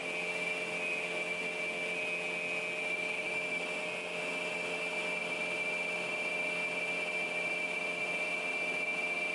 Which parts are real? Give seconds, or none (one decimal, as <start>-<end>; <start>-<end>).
0.0-9.3